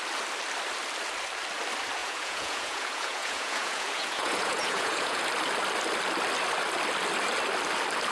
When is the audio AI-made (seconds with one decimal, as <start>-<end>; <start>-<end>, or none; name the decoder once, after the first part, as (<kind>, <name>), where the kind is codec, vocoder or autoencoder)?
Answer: 2.0-5.2 (vocoder, Vocos)